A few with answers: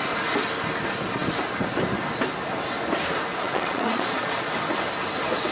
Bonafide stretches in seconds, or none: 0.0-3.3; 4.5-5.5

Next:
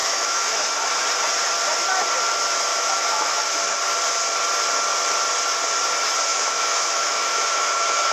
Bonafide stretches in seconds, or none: 0.6-2.7; 3.4-6.3

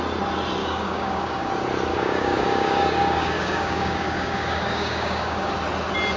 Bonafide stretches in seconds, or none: 0.0-0.6; 1.5-1.9; 5.5-6.2

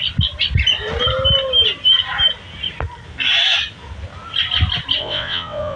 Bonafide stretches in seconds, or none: 0.0-5.0

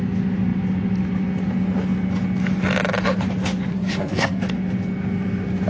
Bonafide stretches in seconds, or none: 0.0-3.7; 4.4-5.7

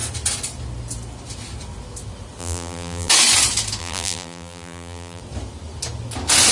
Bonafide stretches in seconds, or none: 0.0-2.4; 3.1-3.8; 5.2-6.5

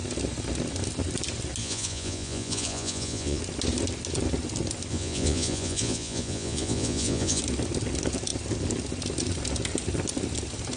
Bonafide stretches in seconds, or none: 0.0-1.6; 3.4-4.9; 7.4-10.8